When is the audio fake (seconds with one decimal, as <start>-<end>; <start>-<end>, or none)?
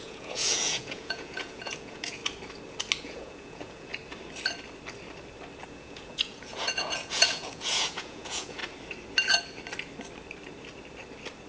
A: 0.0-2.2; 3.0-3.9; 5.7-8.6